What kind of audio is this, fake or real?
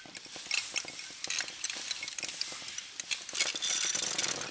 real